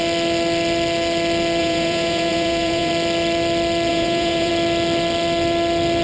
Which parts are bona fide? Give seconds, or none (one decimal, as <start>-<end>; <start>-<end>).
0.0-1.6; 2.9-3.9; 4.5-6.0